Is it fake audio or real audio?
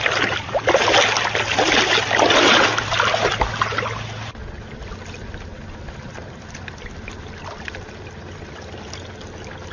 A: real